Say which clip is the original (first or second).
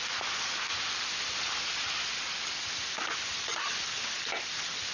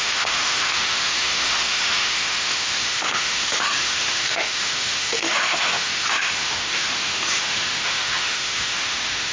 first